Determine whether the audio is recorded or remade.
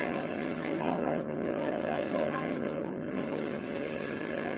remade